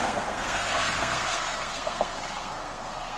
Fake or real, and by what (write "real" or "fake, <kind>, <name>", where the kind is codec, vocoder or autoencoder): fake, codec, SNAC